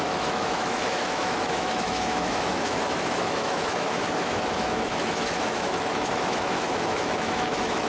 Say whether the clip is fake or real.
fake